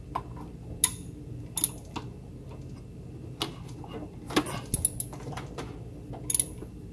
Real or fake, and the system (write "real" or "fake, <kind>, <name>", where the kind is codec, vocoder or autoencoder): real